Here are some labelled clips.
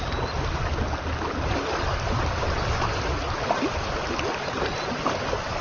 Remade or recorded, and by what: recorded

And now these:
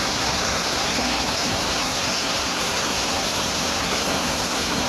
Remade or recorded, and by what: remade, codec, SNAC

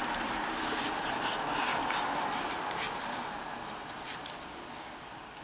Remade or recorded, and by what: recorded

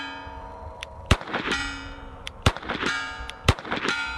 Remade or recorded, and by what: remade, vocoder, BigVGAN v2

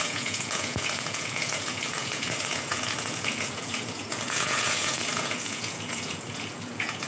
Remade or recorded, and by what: remade, vocoder, Vocos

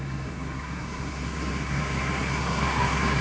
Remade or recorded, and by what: remade, codec, SNAC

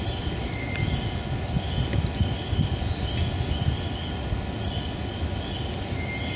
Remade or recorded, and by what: recorded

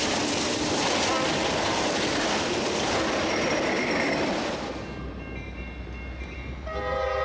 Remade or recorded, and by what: recorded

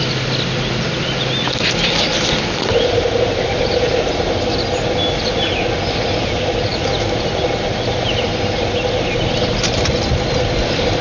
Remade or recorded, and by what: recorded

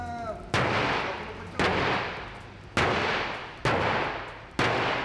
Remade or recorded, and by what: recorded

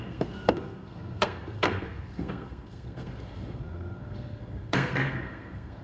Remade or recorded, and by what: remade, codec, SNAC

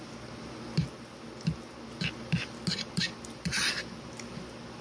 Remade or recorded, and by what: recorded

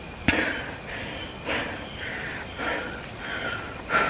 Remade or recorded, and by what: remade, vocoder, BigVGAN v2